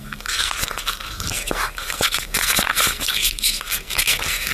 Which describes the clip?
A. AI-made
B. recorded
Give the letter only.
A